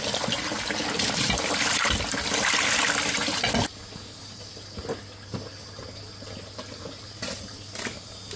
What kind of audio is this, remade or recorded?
recorded